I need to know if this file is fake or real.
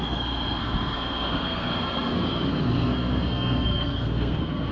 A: fake